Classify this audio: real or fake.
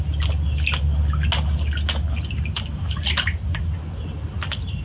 real